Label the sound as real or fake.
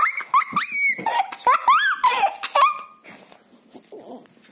real